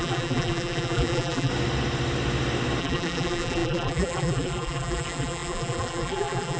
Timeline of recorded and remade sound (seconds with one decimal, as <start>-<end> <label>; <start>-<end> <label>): 0.0-1.5 remade; 1.5-2.8 recorded; 2.8-6.6 remade